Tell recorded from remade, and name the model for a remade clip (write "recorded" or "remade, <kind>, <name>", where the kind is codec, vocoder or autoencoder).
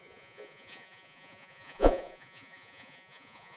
remade, vocoder, Vocos